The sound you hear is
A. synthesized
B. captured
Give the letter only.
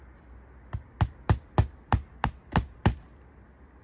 B